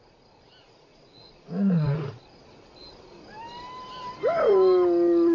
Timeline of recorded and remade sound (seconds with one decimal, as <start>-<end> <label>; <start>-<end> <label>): 0.0-0.6 recorded; 0.6-2.2 remade; 2.2-5.3 recorded